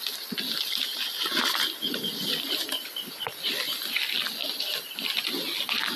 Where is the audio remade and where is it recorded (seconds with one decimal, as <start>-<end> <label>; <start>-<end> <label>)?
0.0-0.9 recorded; 0.9-2.5 remade; 2.5-4.4 recorded; 4.4-5.3 remade; 5.3-6.0 recorded